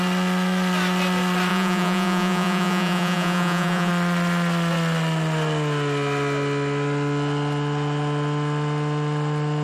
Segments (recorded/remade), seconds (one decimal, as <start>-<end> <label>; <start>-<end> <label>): 0.0-1.5 recorded; 1.5-3.9 remade; 3.9-9.6 recorded